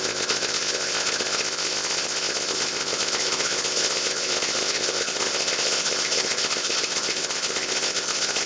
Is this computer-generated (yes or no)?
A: yes